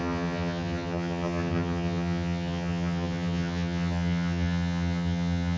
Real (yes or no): no